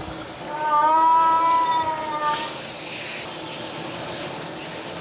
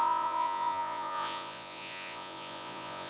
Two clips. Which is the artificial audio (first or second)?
second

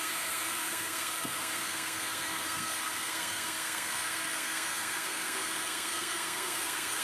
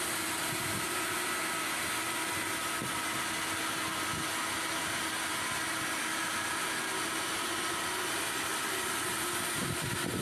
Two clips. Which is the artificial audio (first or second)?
first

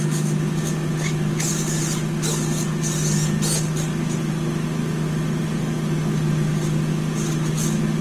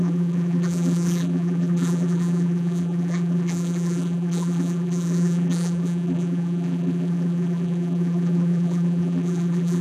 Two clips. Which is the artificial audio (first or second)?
second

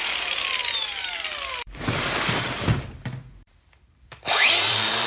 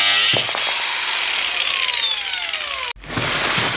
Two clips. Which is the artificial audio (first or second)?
first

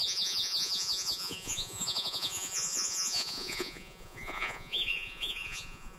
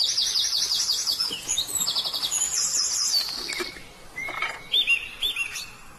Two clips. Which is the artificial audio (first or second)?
first